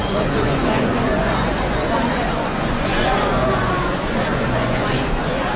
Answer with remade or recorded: remade